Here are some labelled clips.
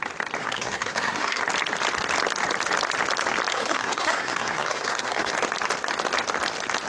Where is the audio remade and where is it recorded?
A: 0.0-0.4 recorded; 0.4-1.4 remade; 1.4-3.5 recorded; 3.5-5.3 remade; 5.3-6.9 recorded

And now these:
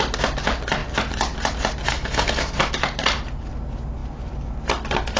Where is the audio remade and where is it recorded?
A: 0.0-1.9 recorded; 1.9-2.6 remade; 2.6-5.2 recorded

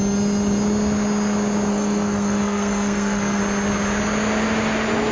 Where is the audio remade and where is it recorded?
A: 0.0-1.7 recorded; 1.7-3.4 remade; 3.4-5.1 recorded

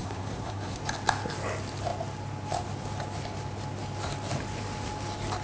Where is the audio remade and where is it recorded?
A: 0.0-0.8 remade; 0.8-5.4 recorded

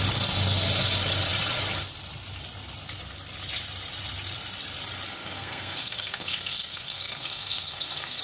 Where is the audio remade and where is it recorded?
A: 0.0-5.2 recorded; 5.2-8.2 remade

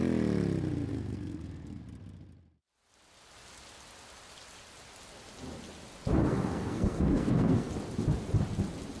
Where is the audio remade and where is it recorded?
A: 0.0-0.9 recorded; 0.9-1.8 remade; 1.8-6.2 recorded; 6.2-7.7 remade; 7.7-9.0 recorded